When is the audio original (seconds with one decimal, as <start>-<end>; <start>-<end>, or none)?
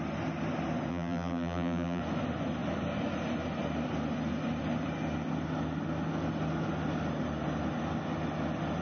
0.0-0.9; 2.0-8.8